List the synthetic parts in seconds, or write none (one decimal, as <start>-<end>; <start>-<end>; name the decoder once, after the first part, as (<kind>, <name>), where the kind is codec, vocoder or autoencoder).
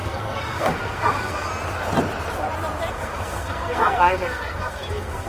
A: 0.0-1.5 (codec, SNAC); 2.9-5.3